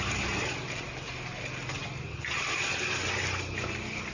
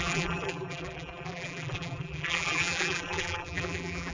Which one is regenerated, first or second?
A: second